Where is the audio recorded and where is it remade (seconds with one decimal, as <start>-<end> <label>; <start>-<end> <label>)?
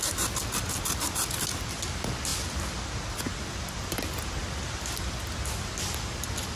0.0-6.6 recorded